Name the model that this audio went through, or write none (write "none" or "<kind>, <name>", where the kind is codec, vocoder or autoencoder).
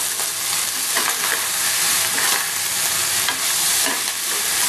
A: none